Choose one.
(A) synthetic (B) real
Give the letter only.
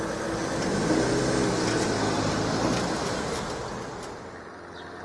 B